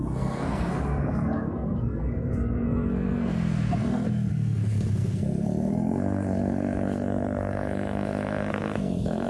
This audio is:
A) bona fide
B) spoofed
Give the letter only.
B